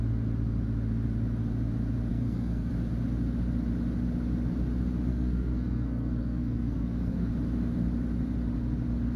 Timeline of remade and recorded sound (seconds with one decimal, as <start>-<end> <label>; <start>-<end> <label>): 0.0-2.1 recorded; 2.1-2.7 remade; 2.7-5.1 recorded; 5.1-7.3 remade; 7.3-9.2 recorded